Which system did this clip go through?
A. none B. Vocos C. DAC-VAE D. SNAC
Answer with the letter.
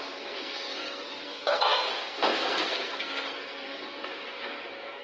D